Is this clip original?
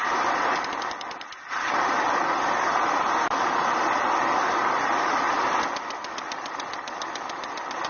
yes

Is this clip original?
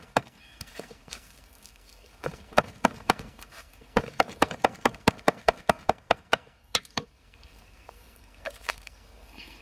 no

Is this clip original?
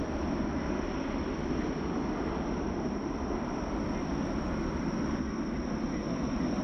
yes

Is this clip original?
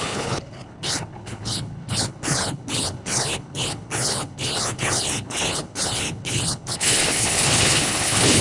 no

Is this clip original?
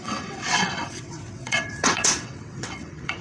no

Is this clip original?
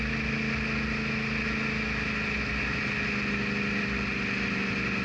yes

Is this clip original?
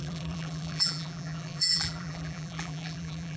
no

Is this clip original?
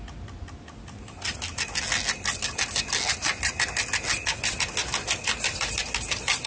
yes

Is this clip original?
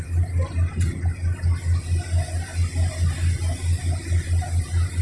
yes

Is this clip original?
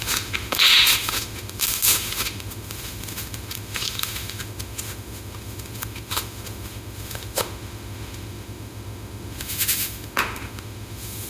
no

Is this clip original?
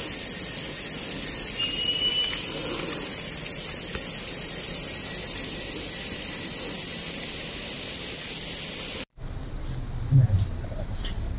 yes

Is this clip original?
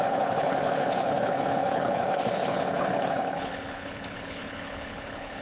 no